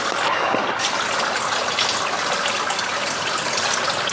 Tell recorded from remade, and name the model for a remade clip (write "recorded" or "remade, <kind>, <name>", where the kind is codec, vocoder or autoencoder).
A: recorded